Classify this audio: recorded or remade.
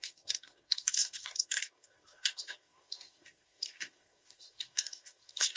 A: remade